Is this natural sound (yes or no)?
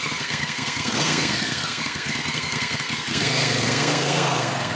no